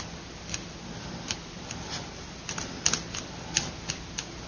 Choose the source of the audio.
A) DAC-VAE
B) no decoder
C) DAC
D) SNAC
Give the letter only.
B